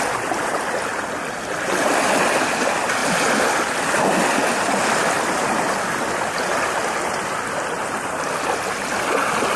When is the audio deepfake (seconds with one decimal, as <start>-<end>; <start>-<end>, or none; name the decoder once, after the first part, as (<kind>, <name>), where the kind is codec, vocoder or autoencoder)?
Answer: none